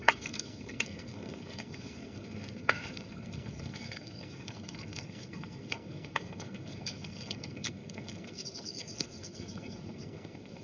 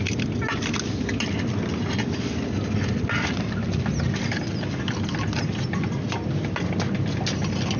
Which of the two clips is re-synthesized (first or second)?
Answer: first